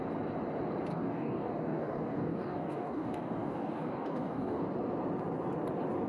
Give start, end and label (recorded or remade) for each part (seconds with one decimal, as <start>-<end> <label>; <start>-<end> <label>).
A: 0.0-0.9 recorded; 0.9-4.6 remade; 4.6-6.1 recorded